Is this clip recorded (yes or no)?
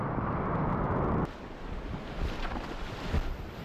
yes